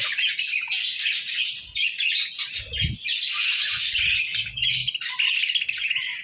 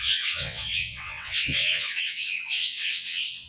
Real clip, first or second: first